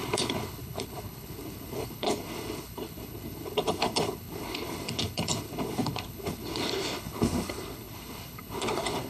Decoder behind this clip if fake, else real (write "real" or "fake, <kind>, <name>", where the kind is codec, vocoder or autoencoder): fake, codec, HILCodec